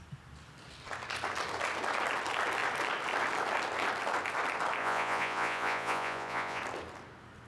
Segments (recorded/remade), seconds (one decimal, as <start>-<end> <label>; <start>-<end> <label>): 0.0-4.8 recorded; 4.8-6.6 remade; 6.6-7.5 recorded